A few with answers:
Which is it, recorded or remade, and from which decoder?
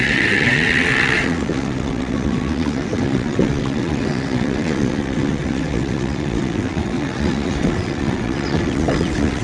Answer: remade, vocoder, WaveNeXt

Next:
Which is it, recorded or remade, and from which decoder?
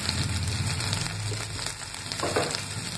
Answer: recorded